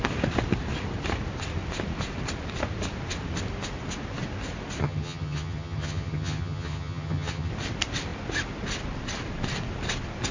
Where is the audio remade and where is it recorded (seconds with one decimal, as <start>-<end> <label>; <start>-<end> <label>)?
0.0-4.8 recorded; 4.8-7.5 remade; 7.5-10.3 recorded

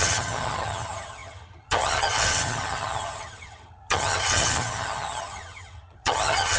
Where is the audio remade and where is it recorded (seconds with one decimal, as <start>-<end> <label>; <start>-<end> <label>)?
0.0-6.6 remade

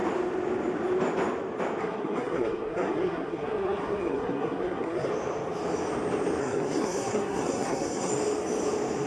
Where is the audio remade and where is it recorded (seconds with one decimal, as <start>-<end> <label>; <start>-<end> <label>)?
0.0-1.8 recorded; 1.8-5.1 remade; 5.1-6.4 recorded; 6.4-8.1 remade; 8.1-9.1 recorded